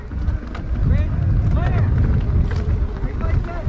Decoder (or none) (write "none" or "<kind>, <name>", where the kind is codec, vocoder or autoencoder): none